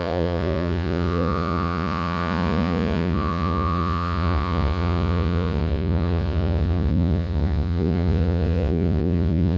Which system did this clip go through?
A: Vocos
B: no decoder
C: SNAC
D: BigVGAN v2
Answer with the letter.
A